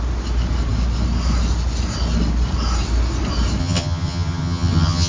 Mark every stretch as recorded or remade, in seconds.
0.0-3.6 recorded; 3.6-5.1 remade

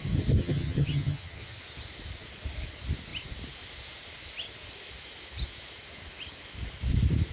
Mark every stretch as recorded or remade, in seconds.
0.0-0.4 recorded; 0.4-1.6 remade; 1.6-7.3 recorded

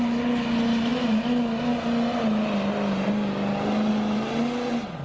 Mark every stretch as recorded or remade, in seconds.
0.0-5.0 recorded

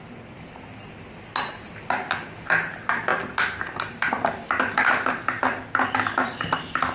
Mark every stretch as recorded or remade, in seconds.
0.0-6.9 recorded